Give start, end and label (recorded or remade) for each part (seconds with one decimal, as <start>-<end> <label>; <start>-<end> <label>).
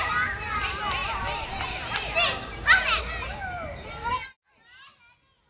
0.0-5.5 recorded